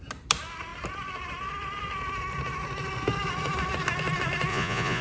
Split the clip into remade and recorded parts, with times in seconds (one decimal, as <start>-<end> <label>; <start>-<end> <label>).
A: 0.0-4.5 recorded; 4.5-5.0 remade